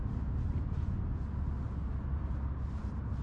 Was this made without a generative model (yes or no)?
yes